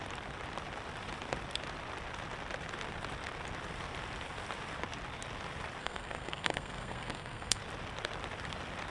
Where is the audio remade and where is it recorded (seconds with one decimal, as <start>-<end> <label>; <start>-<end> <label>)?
0.0-5.8 recorded; 5.8-7.6 remade; 7.6-8.9 recorded